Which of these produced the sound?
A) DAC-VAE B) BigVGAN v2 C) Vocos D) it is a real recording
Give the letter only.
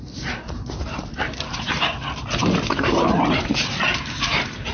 D